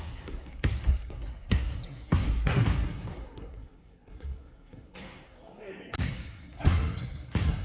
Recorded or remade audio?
remade